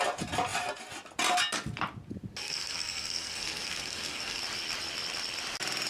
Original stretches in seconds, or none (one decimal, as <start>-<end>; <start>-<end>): 0.0-2.4; 4.4-5.9